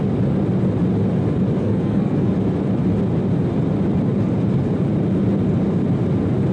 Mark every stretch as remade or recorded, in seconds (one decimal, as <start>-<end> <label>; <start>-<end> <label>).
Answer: 0.0-1.6 recorded; 1.6-2.3 remade; 2.3-6.5 recorded